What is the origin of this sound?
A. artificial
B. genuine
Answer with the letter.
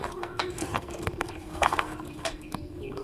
A